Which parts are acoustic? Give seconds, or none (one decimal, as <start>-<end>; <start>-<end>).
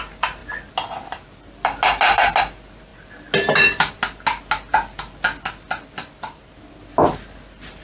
0.0-7.8